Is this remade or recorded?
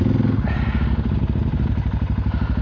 recorded